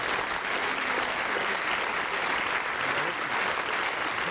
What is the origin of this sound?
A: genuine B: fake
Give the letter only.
A